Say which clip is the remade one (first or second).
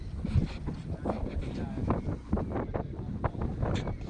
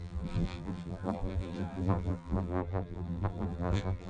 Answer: second